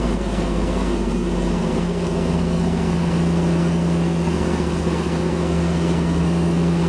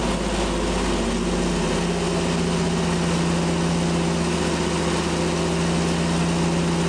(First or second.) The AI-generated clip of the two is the first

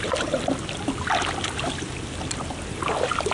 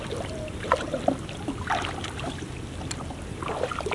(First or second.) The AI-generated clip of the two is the second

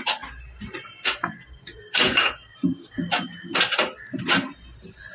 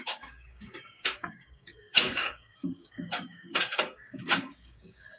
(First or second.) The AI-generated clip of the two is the second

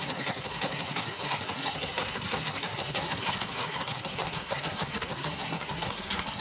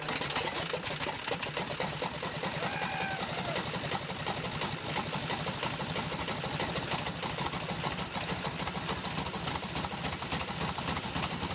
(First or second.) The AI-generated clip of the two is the first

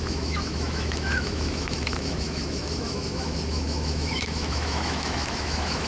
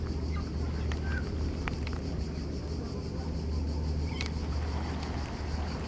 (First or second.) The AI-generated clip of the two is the first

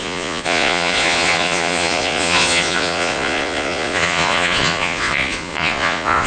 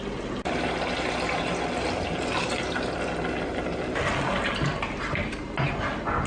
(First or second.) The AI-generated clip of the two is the first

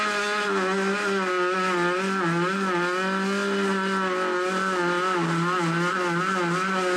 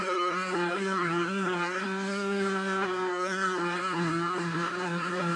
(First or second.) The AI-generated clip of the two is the second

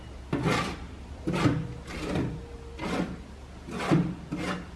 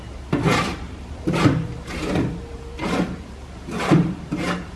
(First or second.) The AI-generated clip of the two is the second